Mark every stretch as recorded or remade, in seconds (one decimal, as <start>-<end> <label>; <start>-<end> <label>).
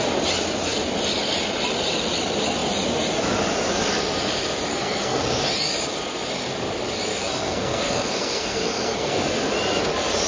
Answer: 0.0-4.7 recorded; 4.7-5.2 remade; 5.2-7.1 recorded; 7.1-9.5 remade; 9.5-10.3 recorded